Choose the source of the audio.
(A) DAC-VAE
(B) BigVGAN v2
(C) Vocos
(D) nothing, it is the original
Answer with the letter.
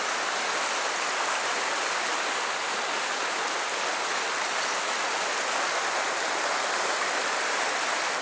D